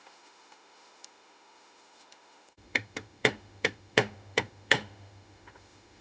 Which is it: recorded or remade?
remade